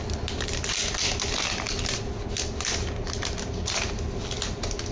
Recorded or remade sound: recorded